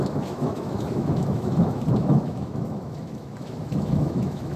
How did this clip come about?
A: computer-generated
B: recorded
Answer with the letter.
A